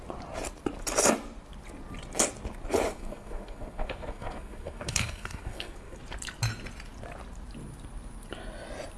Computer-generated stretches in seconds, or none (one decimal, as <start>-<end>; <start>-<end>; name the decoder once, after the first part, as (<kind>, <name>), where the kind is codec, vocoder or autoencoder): 2.9-6.0 (codec, SNAC)